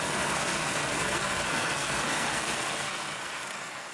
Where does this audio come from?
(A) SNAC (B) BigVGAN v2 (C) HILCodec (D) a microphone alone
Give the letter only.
A